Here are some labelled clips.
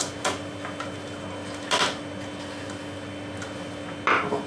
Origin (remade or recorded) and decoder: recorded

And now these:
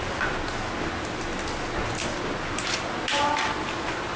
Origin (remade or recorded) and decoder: recorded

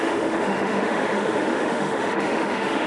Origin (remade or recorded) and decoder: remade, autoencoder, DAC-VAE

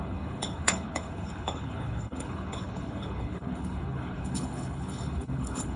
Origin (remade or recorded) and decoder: remade, codec, HILCodec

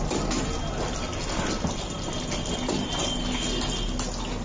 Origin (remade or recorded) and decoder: recorded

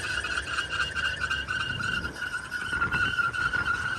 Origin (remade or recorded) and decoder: recorded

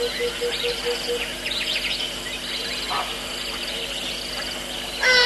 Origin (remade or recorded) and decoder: recorded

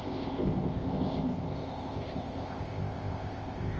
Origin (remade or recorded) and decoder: remade, codec, ZipCodec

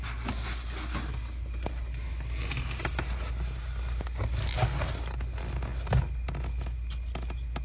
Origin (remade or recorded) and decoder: recorded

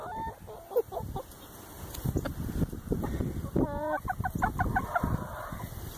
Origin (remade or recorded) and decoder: recorded